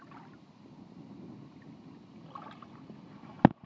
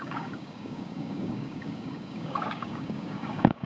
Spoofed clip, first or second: second